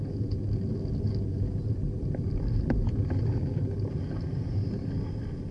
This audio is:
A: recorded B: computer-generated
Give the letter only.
A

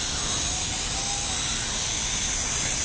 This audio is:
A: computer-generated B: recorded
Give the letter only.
B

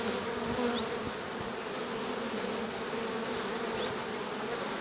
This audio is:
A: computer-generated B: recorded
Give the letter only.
B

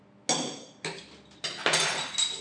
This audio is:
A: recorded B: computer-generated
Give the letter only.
A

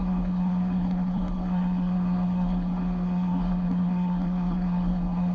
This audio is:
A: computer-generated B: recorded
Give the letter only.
A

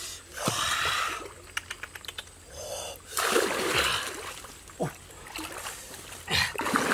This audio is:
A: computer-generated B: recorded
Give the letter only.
B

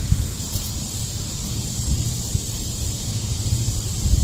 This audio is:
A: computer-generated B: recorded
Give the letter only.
A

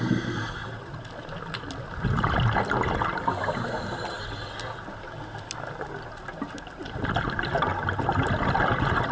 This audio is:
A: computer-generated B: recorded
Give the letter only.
B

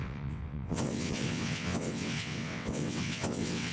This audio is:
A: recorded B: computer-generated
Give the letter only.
B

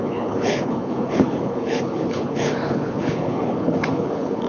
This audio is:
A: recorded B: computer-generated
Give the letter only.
B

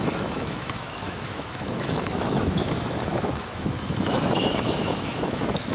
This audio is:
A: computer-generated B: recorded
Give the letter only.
A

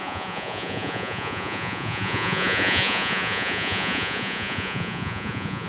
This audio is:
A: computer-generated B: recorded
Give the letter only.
A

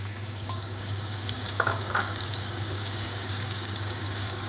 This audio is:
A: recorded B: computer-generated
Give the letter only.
B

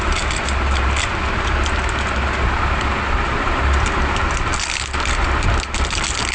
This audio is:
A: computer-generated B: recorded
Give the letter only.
B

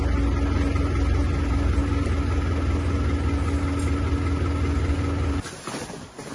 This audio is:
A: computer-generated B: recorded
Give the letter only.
B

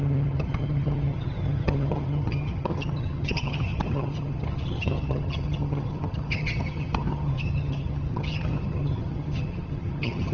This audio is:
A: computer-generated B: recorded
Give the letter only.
A